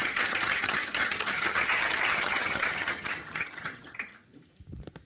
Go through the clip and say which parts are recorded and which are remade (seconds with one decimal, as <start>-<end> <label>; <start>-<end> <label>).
0.0-4.1 remade; 4.1-5.1 recorded